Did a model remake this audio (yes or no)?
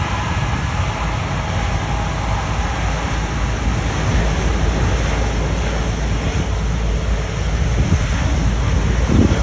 no